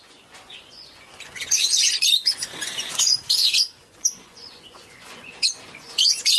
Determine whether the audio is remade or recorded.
remade